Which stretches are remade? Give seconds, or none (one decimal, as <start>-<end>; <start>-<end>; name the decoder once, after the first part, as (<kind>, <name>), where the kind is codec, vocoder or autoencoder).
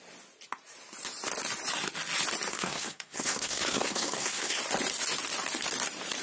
2.5-4.6 (codec, SNAC)